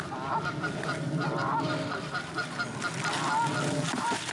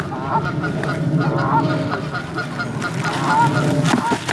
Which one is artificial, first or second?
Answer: first